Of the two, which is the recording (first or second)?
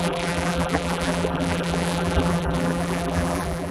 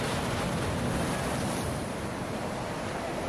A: second